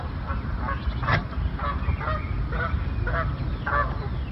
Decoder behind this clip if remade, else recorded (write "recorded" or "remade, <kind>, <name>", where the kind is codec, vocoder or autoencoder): recorded